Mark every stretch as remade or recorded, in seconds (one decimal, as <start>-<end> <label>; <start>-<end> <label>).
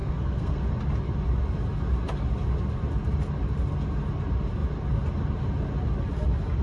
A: 0.0-0.6 remade; 0.6-6.6 recorded